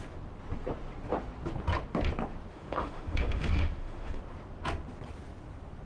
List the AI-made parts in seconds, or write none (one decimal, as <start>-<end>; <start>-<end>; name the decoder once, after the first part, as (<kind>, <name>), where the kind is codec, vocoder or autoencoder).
2.5-4.2 (autoencoder, DAC-VAE)